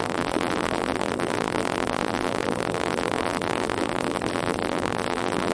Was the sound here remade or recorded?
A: remade